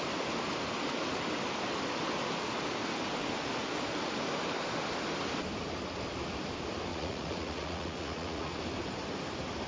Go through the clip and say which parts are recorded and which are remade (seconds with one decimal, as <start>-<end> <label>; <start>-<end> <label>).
0.0-6.9 recorded; 6.9-8.6 remade; 8.6-9.7 recorded